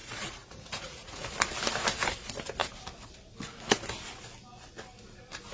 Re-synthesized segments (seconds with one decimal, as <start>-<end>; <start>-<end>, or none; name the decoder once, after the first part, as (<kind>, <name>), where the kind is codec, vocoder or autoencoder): 0.0-1.3 (vocoder, Vocos)